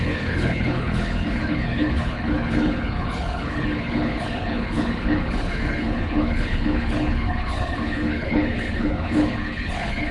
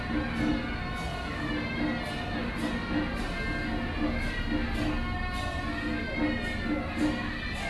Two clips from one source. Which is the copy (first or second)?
first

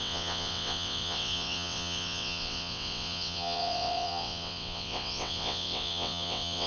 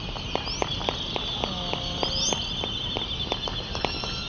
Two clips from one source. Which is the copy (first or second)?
first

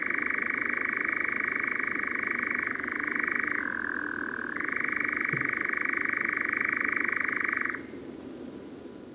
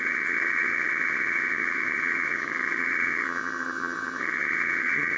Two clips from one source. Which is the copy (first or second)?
second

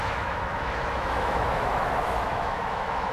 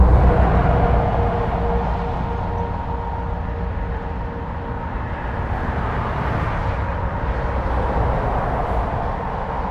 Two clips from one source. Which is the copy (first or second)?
first